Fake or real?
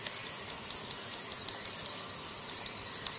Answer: real